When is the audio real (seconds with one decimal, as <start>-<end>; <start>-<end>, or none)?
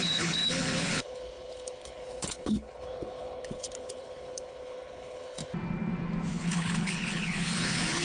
5.4-6.3